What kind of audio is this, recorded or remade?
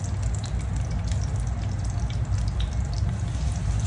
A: recorded